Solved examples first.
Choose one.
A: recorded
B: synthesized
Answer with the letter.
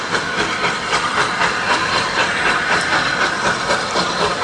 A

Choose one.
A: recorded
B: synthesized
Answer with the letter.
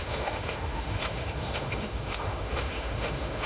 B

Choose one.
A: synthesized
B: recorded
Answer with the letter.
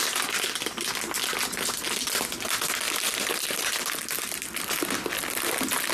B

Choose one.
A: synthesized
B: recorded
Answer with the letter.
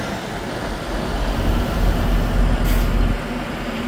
B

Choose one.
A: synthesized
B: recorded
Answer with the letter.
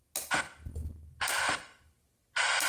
B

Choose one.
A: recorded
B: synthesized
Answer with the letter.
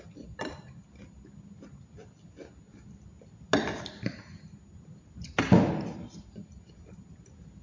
A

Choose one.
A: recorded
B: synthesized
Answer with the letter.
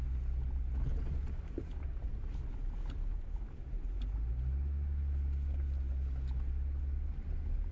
A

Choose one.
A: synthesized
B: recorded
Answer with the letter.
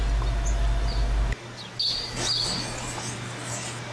B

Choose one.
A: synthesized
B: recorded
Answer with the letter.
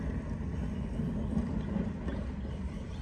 B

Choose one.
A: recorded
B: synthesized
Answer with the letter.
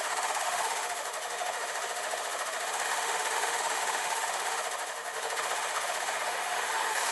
B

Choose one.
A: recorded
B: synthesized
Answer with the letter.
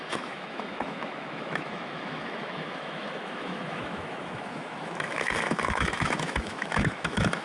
B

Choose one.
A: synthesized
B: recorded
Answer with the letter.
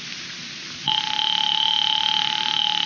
B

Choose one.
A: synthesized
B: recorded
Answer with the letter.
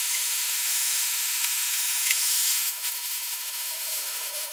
A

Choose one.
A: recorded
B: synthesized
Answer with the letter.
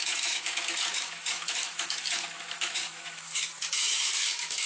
B